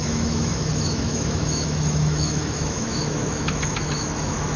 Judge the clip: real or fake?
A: fake